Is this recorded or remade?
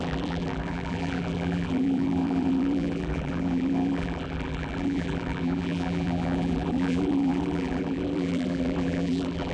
remade